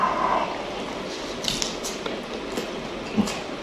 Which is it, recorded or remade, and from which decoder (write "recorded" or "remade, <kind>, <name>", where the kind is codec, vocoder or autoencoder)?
recorded